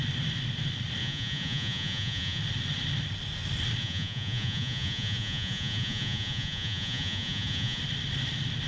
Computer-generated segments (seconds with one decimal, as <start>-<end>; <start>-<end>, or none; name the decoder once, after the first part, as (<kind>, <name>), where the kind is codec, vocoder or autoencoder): 1.0-2.4 (vocoder, Vocos); 3.8-7.8